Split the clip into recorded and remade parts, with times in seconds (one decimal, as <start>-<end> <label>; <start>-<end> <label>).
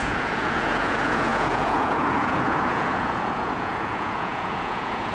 0.0-5.1 remade